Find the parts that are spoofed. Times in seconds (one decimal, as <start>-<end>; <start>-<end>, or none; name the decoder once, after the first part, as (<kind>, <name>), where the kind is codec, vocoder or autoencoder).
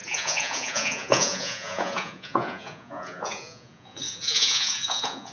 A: 0.0-5.3 (vocoder, Vocos)